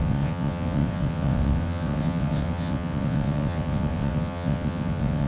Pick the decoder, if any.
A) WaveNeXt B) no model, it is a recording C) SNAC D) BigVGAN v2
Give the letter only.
A